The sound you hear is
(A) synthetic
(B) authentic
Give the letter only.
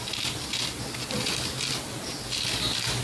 B